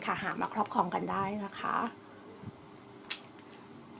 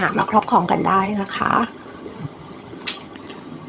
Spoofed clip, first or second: second